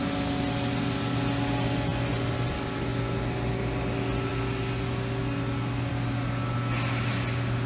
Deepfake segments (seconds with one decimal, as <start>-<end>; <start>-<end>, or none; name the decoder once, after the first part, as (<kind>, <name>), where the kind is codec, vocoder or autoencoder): none